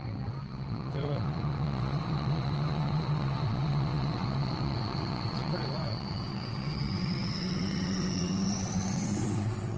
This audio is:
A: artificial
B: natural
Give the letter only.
A